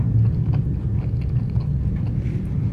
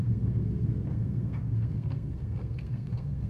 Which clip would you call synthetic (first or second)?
second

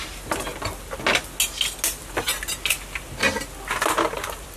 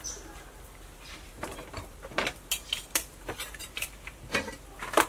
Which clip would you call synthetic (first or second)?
second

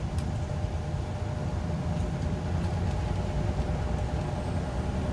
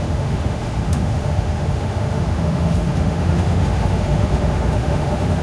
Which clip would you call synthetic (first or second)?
second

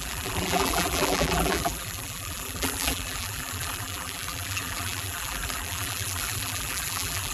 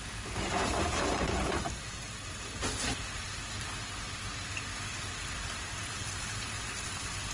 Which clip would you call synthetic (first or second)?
first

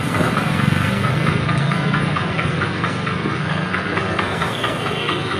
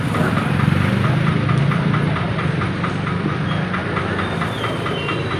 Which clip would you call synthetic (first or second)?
first